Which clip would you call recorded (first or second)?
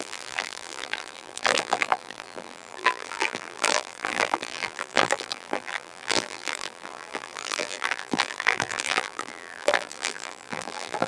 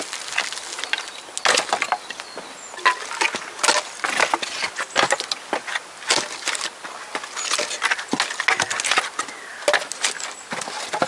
second